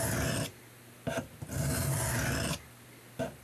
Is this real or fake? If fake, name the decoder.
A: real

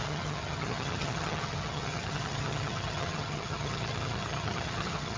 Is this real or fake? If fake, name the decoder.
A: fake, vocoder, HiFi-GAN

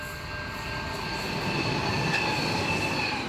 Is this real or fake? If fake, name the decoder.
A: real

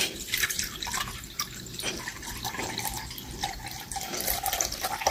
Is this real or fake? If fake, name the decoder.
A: fake, vocoder, BigVGAN v2